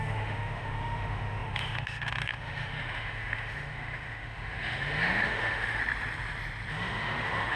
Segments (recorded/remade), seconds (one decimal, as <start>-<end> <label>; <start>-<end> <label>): 0.0-5.8 remade; 5.8-6.7 recorded; 6.7-7.6 remade